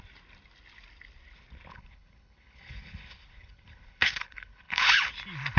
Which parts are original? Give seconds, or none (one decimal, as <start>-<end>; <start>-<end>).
0.0-1.7; 5.1-5.6